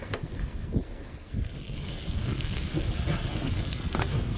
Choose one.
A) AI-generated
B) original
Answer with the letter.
A